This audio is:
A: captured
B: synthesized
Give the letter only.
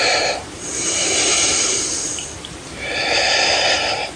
B